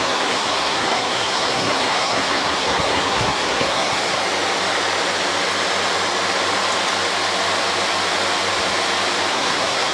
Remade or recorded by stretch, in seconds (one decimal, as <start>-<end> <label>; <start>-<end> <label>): 0.0-4.2 remade; 4.2-9.3 recorded; 9.3-9.9 remade